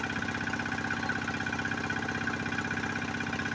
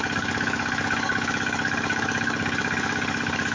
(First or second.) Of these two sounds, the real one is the first